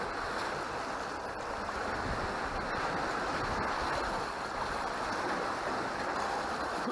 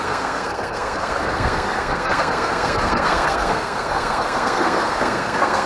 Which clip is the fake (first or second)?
second